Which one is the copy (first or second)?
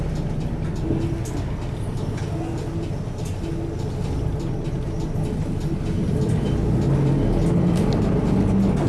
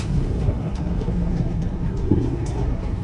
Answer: second